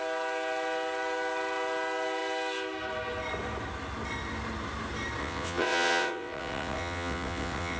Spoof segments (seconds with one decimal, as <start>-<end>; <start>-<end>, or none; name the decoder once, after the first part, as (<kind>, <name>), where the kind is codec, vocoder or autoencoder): 5.2-7.8 (vocoder, WaveNeXt)